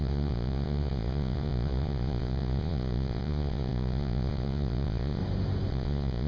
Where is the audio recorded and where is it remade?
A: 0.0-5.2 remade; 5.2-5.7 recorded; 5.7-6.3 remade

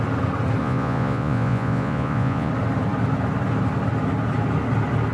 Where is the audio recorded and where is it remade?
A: 0.0-0.6 recorded; 0.6-2.5 remade; 2.5-5.1 recorded

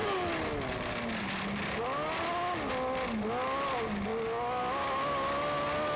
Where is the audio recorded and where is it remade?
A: 0.0-6.0 recorded

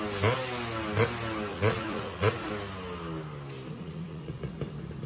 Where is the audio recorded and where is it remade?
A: 0.0-1.5 recorded; 1.5-2.5 remade; 2.5-3.7 recorded; 3.7-4.5 remade; 4.5-5.1 recorded

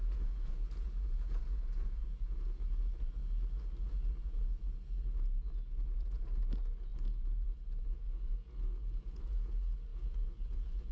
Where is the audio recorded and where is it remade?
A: 0.0-3.2 remade; 3.2-3.8 recorded; 3.8-10.9 remade

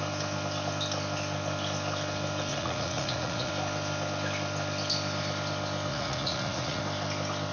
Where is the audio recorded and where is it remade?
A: 0.0-2.5 recorded; 2.5-3.5 remade; 3.5-5.9 recorded; 5.9-6.8 remade; 6.8-7.5 recorded

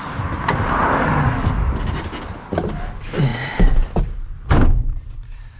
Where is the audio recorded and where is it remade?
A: 0.0-5.6 recorded